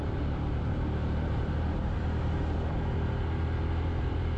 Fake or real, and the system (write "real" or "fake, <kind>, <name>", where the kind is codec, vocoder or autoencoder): real